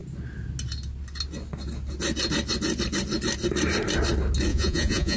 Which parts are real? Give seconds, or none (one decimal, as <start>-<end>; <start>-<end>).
0.0-4.5